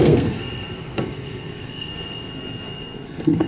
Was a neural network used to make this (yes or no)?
yes